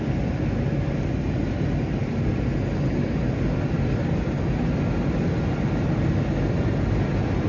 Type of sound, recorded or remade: recorded